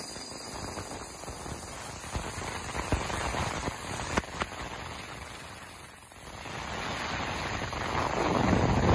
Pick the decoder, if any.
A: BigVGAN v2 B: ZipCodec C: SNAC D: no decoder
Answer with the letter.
D